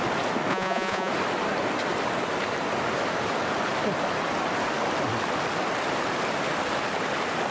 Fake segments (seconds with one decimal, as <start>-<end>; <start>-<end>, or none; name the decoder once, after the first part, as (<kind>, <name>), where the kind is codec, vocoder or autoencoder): 0.5-1.1 (vocoder, Vocos)